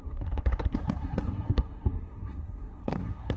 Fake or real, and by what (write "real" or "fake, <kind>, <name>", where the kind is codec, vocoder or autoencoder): fake, codec, SNAC